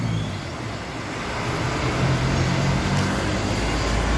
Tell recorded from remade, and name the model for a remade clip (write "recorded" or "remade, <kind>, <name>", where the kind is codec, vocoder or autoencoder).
recorded